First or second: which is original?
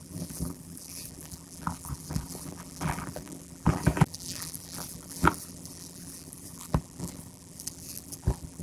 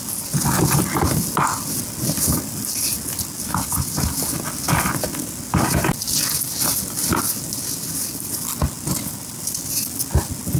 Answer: second